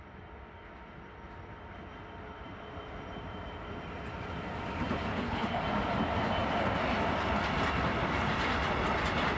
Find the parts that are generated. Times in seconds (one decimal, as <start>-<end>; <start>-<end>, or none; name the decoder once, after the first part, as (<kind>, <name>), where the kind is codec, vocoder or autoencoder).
5.1-5.6 (codec, HILCodec)